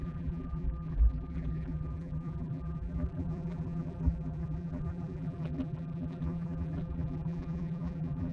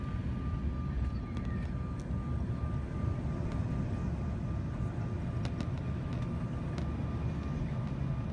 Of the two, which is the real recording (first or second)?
second